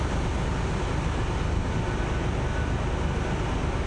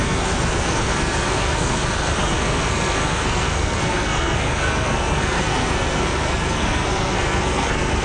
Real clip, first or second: first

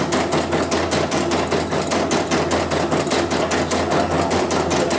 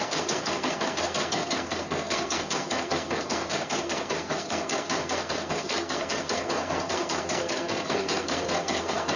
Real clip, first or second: first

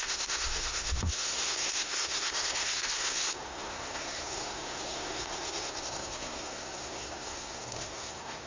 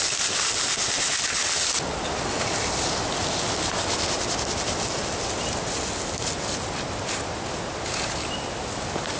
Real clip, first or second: second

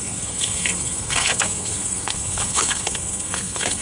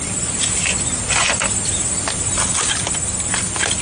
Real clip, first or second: second